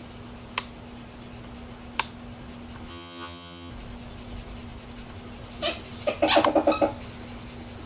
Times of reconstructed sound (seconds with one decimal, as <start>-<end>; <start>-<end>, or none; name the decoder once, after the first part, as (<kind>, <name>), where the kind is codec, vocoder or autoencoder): 2.9-3.7 (vocoder, HiFi-GAN)

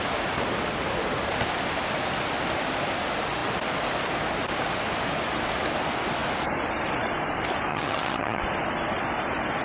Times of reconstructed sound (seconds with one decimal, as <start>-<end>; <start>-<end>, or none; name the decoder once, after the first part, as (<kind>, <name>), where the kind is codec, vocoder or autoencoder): 7.7-8.4 (vocoder, HiFi-GAN)

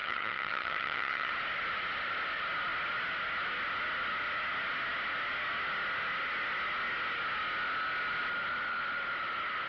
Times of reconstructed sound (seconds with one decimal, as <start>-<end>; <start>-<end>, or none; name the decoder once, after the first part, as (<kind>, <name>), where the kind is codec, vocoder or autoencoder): 0.0-1.3 (vocoder, HiFi-GAN)

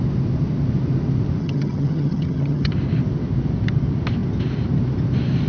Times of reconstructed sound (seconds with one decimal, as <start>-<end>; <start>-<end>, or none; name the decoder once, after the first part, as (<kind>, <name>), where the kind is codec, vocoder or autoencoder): 1.4-2.7 (vocoder, HiFi-GAN)

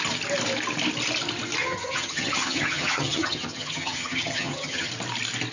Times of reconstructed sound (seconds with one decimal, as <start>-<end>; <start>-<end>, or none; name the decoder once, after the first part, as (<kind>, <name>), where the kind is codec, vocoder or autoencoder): 1.6-4.9 (vocoder, HiFi-GAN)

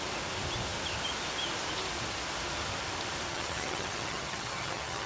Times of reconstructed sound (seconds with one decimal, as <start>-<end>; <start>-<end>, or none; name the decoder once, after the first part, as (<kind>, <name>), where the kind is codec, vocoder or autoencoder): 3.3-5.1 (vocoder, HiFi-GAN)